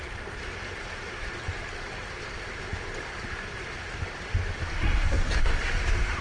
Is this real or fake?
real